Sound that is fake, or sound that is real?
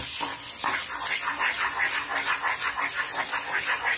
real